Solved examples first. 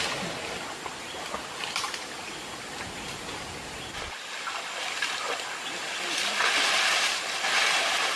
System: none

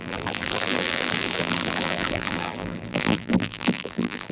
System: vocoder, BigVGAN v2